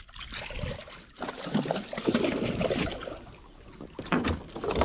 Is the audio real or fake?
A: real